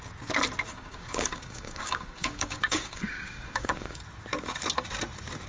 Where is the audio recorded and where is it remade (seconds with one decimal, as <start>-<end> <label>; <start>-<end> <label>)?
0.0-0.7 recorded; 0.7-4.0 remade; 4.0-5.5 recorded